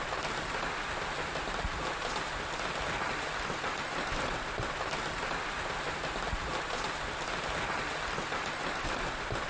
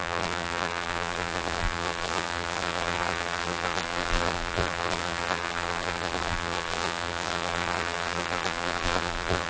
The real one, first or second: first